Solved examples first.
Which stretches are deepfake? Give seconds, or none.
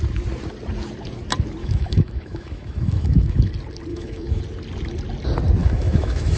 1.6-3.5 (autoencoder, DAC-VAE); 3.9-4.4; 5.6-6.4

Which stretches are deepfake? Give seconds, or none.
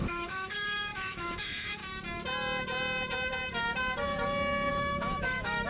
0.0-1.8 (autoencoder, DAC-VAE); 4.7-5.7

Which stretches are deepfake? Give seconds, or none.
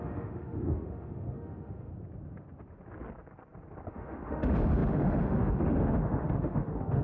0.0-1.9 (autoencoder, DAC-VAE); 3.9-7.0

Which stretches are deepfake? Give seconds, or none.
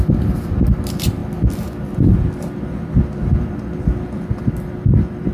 none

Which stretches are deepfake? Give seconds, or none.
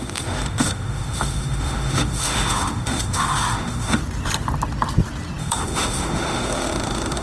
0.0-4.0 (autoencoder, DAC-VAE); 5.4-7.2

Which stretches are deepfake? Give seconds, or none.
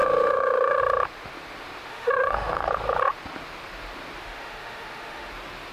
0.0-0.8 (autoencoder, DAC-VAE); 1.9-2.7; 4.2-5.3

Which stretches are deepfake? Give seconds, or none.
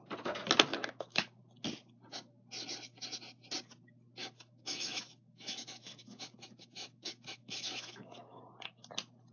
0.7-1.4 (autoencoder, DAC-VAE); 4.2-8.4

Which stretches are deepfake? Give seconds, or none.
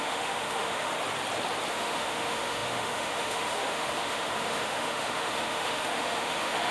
0.0-0.9 (autoencoder, DAC-VAE); 1.7-6.7